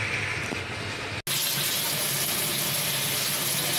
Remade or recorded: recorded